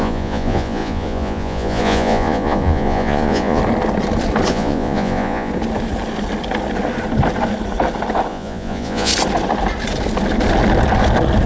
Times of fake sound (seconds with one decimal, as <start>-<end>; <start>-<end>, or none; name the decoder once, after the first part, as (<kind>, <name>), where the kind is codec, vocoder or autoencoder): 0.0-3.6 (vocoder, Vocos); 4.5-5.5; 8.3-9.1